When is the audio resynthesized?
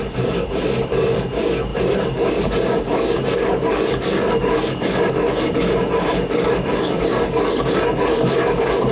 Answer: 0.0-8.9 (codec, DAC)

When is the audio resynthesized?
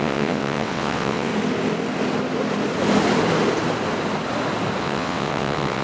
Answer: 0.0-1.3 (vocoder, WaveNeXt); 4.8-5.8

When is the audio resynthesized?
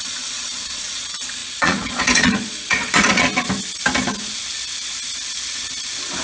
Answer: 0.0-3.3 (vocoder, Vocos)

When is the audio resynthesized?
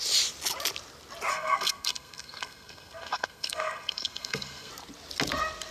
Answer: 1.3-4.7 (codec, SNAC)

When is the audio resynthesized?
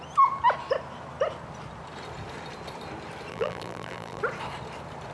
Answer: 3.3-4.2 (vocoder, BigVGAN v2)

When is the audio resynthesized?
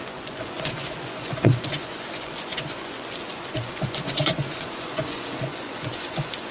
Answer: 0.0-6.5 (vocoder, Vocos)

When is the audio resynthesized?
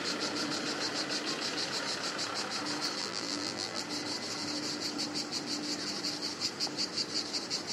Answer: 3.0-3.8 (vocoder, BigVGAN v2)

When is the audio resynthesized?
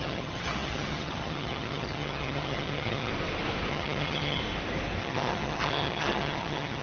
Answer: 0.0-3.1 (vocoder, HiFi-GAN); 3.7-4.4; 5.0-6.8